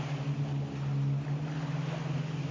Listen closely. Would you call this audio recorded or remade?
recorded